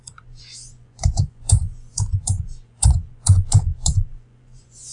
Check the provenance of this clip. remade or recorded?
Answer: remade